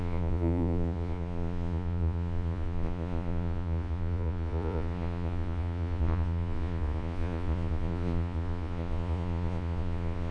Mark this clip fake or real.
fake